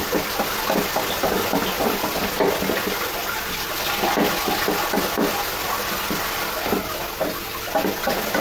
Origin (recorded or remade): recorded